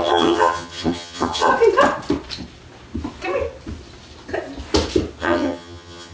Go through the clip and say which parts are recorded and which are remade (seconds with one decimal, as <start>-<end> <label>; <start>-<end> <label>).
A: 0.0-1.5 remade; 1.5-5.2 recorded; 5.2-6.1 remade